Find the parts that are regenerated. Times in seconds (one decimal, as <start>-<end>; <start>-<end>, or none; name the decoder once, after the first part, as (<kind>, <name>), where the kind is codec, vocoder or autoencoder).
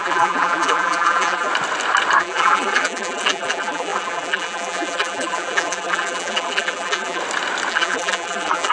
0.0-1.5 (vocoder, BigVGAN v2); 2.2-7.2; 7.7-8.7